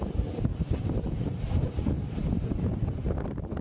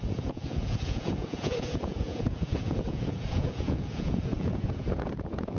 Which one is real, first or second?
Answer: first